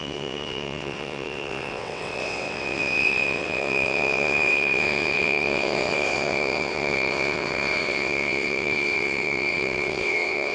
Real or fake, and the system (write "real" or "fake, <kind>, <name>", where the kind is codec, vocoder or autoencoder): fake, vocoder, WaveNeXt